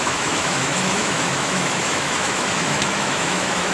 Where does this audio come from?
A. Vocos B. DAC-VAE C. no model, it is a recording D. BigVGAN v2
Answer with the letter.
B